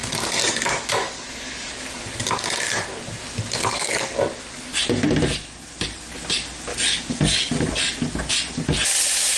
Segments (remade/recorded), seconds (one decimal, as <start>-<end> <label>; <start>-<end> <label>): 0.0-2.2 remade; 2.2-3.6 recorded; 3.6-4.8 remade; 4.8-6.7 recorded; 6.7-7.7 remade; 7.7-9.4 recorded